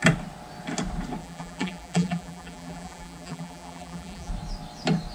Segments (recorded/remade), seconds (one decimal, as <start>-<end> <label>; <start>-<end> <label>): 0.0-1.2 recorded; 1.2-4.3 remade; 4.3-5.1 recorded